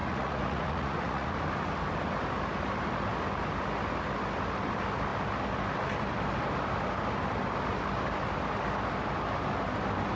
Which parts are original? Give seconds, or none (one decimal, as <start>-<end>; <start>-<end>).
1.3-10.2